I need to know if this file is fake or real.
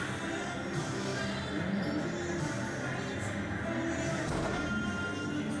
real